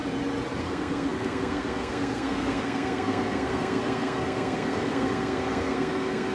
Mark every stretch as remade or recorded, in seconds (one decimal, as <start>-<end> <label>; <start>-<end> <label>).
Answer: 0.0-0.6 recorded; 0.6-6.3 remade